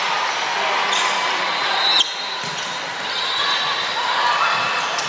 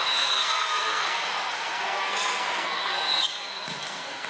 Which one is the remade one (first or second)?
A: second